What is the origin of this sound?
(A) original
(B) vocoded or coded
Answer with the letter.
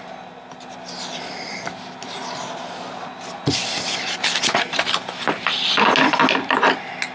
A